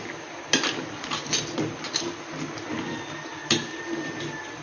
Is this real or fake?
real